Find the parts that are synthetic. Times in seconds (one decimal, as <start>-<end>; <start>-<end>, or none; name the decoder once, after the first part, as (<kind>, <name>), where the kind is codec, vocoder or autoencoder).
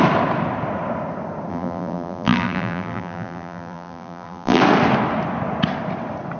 1.5-4.6 (vocoder, BigVGAN v2)